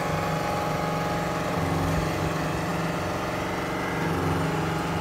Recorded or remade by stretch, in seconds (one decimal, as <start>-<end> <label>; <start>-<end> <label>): 0.0-5.0 recorded